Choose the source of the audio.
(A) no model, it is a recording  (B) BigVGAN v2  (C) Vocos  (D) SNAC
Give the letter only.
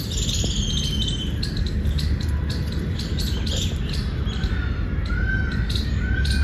A